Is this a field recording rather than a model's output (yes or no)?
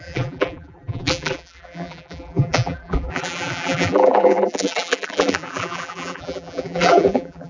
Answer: no